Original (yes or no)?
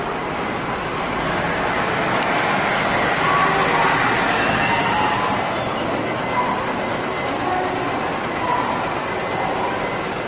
yes